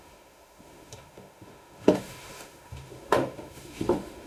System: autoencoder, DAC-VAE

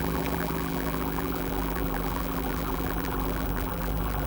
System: vocoder, BigVGAN v2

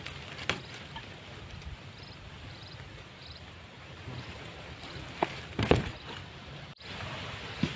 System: vocoder, BigVGAN v2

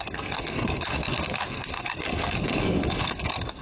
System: codec, SNAC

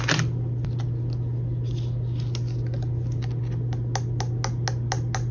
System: none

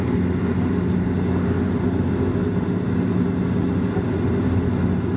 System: none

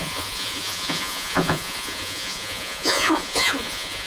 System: vocoder, Vocos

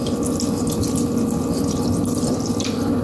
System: none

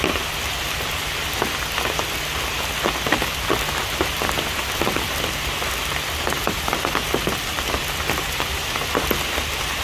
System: vocoder, BigVGAN v2